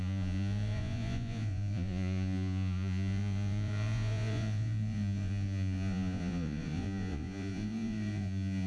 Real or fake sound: fake